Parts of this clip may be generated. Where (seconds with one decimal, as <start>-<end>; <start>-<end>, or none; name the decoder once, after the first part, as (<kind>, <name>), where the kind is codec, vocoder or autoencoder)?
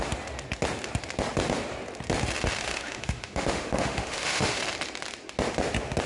2.6-4.6 (autoencoder, DAC-VAE)